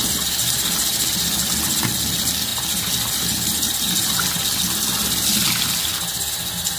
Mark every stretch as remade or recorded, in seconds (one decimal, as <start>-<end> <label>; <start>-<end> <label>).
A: 0.0-6.8 recorded